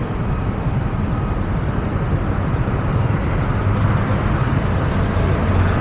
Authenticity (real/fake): real